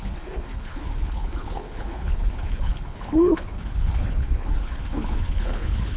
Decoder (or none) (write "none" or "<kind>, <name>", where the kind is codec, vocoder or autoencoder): codec, HILCodec